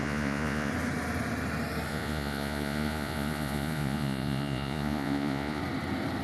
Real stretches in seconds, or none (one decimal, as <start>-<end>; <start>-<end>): 0.7-1.9; 5.6-6.2